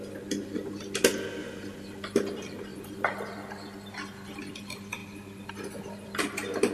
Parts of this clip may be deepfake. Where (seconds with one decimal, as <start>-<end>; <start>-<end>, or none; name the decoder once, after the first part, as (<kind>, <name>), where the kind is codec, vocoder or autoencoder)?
1.4-2.3 (vocoder, BigVGAN v2); 2.7-4.4